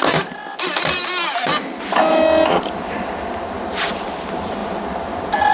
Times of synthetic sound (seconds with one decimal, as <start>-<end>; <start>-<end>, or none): none